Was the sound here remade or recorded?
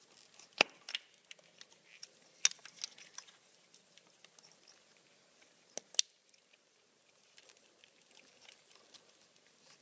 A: recorded